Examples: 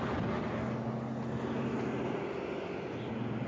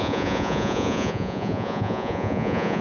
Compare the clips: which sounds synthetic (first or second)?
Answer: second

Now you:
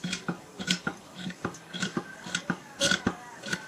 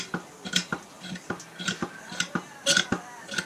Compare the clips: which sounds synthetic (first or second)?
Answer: first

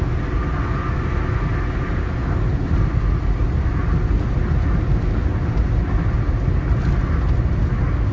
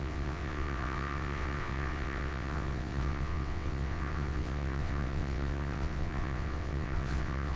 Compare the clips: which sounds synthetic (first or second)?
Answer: second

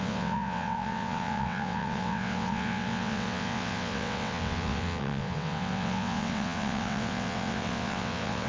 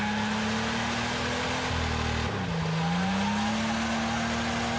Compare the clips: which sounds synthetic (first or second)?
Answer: first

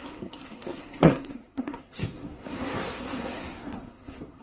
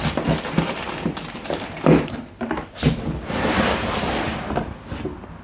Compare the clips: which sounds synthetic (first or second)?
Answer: first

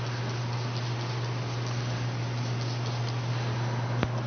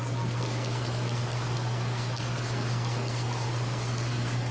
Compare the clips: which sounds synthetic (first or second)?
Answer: second